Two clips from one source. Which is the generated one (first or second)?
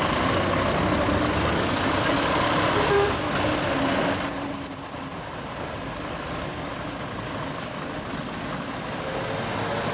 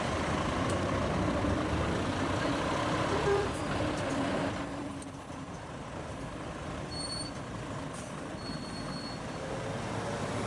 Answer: second